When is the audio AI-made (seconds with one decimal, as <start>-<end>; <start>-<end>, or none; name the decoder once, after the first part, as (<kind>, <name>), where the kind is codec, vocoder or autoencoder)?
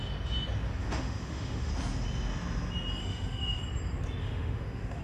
0.8-1.7 (autoencoder, DAC-VAE); 3.0-3.6; 4.2-5.0